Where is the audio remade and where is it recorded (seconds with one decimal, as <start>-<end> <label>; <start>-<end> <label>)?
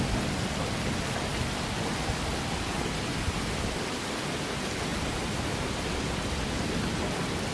0.0-4.9 recorded; 4.9-6.1 remade; 6.1-7.5 recorded